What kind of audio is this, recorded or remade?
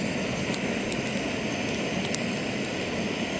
recorded